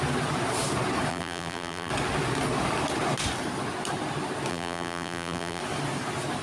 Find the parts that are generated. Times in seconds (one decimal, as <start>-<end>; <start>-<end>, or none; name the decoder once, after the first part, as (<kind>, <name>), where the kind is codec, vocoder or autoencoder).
1.1-1.9 (vocoder, BigVGAN v2); 4.5-5.6